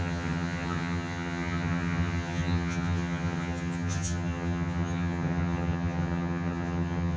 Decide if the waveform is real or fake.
fake